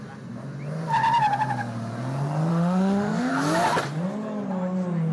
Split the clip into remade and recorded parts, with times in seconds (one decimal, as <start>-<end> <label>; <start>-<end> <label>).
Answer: 0.0-2.5 recorded; 2.5-3.3 remade; 3.3-5.1 recorded